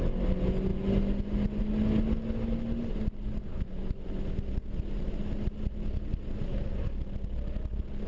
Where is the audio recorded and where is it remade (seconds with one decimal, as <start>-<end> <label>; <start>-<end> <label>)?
0.0-3.5 recorded; 3.5-4.4 remade; 4.4-8.1 recorded